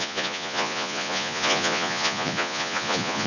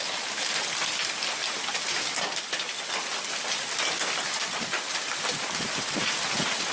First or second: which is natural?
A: second